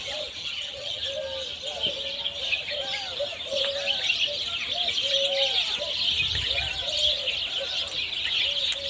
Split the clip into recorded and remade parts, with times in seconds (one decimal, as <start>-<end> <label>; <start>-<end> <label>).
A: 0.0-0.4 recorded; 0.4-1.0 remade; 1.0-8.9 recorded